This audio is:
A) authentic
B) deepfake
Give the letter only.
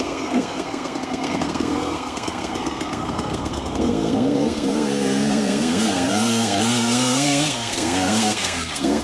B